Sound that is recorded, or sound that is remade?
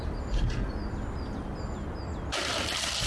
recorded